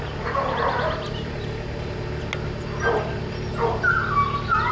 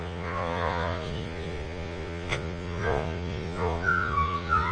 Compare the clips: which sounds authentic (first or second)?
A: first